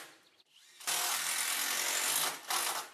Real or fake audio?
real